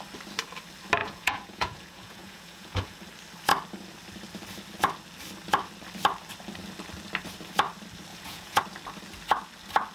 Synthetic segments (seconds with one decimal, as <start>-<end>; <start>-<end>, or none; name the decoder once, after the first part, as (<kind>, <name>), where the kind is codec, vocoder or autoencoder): 1.0-3.0 (vocoder, Vocos); 8.1-8.6